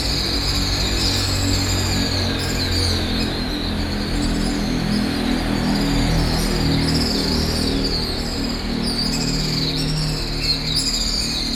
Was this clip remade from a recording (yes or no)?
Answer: no